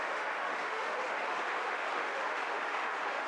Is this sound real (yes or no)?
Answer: no